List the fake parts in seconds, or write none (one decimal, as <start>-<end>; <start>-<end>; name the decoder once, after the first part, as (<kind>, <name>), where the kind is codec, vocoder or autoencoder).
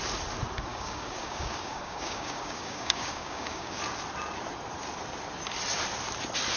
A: 0.7-3.8 (codec, DAC)